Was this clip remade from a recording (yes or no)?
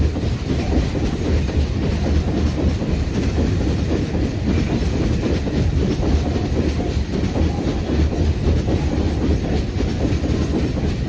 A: yes